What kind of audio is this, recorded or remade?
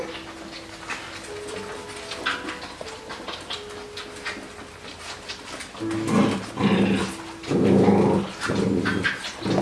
recorded